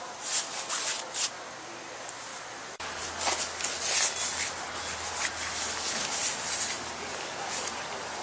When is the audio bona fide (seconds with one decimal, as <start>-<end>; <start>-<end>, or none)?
0.0-8.2